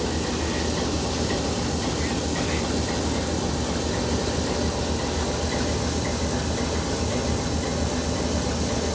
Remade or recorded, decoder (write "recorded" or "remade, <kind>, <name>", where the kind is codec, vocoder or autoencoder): recorded